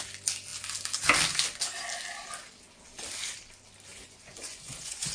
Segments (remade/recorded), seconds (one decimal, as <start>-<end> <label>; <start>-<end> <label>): 0.0-3.9 recorded; 3.9-5.1 remade